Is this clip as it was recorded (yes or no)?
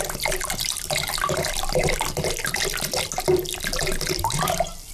yes